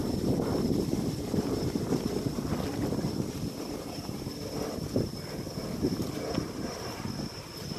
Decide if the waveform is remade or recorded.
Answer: recorded